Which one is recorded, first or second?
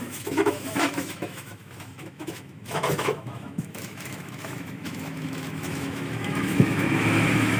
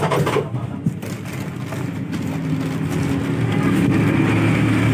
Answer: second